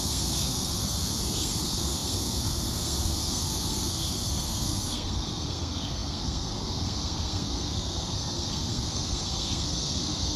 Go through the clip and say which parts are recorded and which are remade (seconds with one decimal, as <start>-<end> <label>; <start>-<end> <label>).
0.0-10.4 remade